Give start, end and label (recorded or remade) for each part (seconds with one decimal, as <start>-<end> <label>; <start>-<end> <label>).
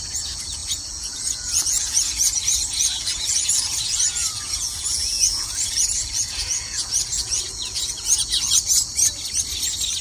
0.0-8.9 remade; 8.9-10.0 recorded